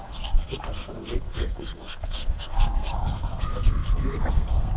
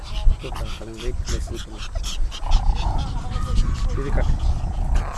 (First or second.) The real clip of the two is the second